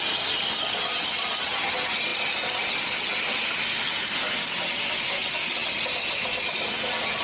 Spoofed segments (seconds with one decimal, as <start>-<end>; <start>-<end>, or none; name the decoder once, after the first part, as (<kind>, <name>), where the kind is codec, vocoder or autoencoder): none